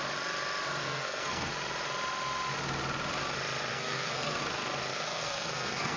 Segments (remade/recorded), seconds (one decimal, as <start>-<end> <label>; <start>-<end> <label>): 0.0-0.8 recorded; 0.8-1.5 remade; 1.5-3.7 recorded; 3.7-4.4 remade; 4.4-4.9 recorded; 4.9-6.0 remade